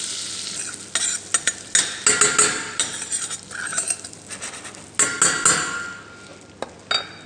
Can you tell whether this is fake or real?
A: real